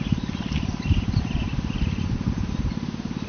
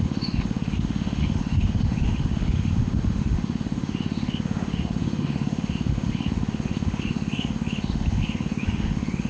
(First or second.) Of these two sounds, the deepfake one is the second